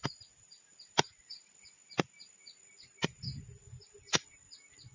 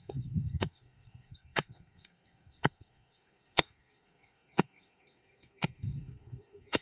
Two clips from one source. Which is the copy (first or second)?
second